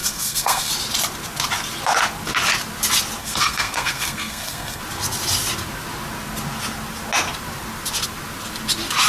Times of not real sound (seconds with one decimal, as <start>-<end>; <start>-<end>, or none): 0.0-0.7; 3.2-4.8